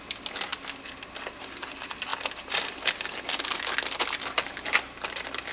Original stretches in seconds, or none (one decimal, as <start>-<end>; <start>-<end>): 0.0-5.5